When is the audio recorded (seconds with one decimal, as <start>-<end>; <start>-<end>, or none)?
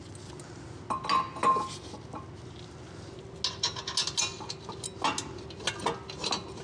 0.0-6.6